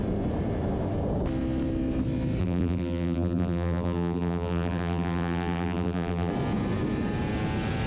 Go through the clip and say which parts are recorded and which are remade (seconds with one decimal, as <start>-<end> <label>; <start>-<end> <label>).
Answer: 0.0-2.4 recorded; 2.4-6.3 remade; 6.3-7.9 recorded